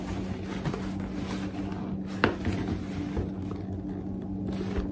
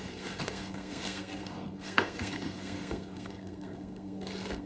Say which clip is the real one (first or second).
first